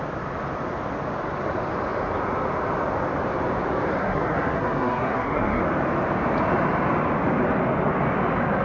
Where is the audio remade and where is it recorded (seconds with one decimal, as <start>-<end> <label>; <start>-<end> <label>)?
0.0-4.0 recorded; 4.0-5.6 remade; 5.6-8.6 recorded